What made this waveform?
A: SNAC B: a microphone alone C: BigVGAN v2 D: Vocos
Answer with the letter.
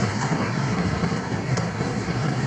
A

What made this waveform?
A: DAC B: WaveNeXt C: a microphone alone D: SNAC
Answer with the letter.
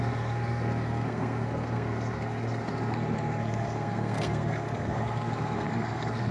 D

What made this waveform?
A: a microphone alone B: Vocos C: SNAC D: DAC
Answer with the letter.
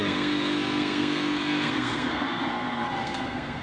C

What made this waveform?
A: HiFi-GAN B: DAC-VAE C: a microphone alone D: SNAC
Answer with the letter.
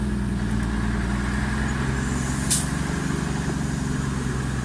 C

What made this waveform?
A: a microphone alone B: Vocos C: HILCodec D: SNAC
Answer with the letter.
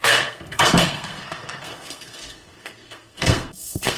D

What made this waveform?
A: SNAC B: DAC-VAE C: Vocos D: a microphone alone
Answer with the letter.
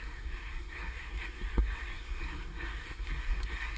A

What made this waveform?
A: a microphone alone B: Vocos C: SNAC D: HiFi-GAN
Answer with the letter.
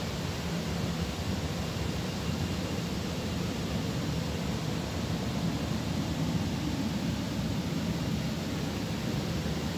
A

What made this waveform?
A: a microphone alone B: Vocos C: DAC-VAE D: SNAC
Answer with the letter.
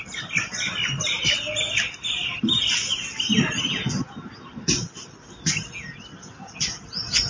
A